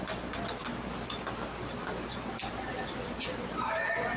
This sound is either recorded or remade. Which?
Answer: recorded